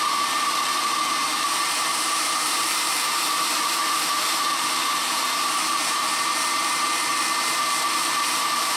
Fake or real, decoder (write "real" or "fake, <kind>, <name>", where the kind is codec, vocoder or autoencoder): fake, vocoder, BigVGAN v2